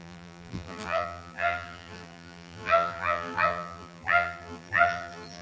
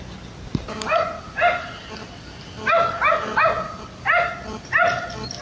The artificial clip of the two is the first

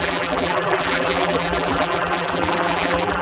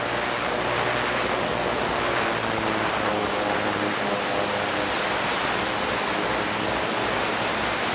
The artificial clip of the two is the first